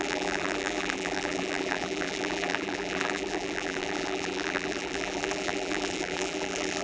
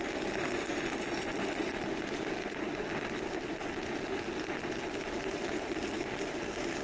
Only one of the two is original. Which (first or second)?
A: second